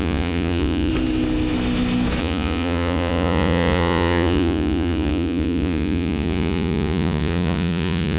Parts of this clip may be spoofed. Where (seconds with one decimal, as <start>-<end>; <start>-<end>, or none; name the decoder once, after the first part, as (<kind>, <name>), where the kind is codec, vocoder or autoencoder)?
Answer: 0.0-0.9 (vocoder, Vocos); 2.2-8.2

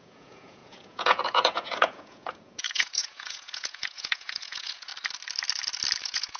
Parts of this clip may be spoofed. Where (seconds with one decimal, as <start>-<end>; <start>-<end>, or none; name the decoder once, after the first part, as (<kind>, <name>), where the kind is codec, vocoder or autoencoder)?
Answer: 0.0-4.9 (vocoder, Vocos); 6.0-6.4